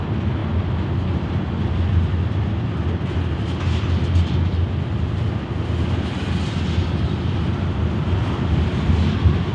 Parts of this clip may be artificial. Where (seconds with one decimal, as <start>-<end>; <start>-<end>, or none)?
none